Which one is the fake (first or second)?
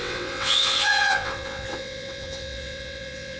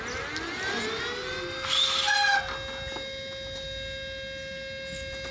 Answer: first